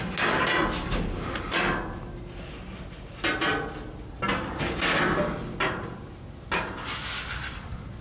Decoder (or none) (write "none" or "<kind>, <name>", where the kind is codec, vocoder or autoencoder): none